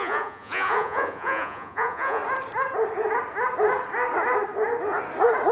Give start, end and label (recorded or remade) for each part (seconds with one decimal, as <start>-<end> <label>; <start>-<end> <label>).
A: 0.0-2.2 remade; 2.2-5.5 recorded